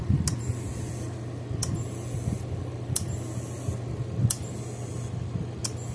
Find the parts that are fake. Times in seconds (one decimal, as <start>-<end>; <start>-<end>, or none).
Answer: none